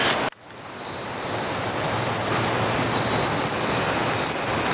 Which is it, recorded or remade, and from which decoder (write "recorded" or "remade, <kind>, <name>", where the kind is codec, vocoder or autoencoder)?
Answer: recorded